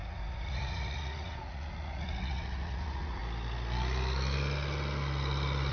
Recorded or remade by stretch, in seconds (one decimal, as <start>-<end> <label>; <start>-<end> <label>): 0.0-3.2 remade; 3.2-5.7 recorded